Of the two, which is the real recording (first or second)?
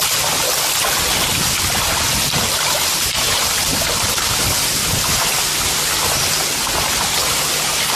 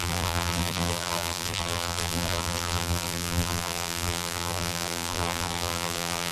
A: first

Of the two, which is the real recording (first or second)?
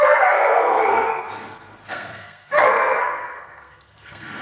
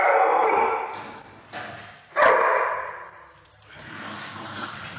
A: second